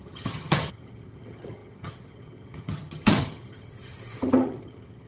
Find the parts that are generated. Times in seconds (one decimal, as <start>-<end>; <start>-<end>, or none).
0.0-5.1

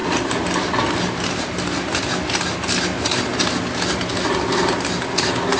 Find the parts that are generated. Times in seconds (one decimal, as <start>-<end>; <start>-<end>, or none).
none